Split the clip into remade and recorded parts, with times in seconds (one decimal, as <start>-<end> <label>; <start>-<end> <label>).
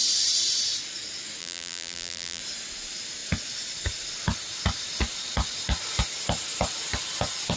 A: 0.0-1.4 recorded; 1.4-2.4 remade; 2.4-7.6 recorded